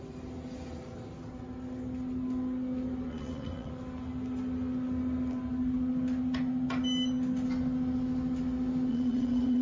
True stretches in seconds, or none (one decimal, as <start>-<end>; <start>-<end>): 0.0-3.1; 3.7-8.9